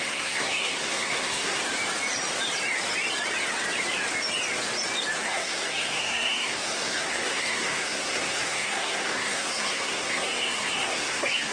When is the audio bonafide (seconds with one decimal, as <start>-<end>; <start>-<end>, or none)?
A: 1.6-5.2